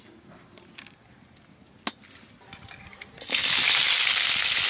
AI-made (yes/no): no